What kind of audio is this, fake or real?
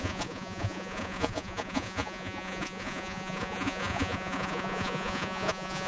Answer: fake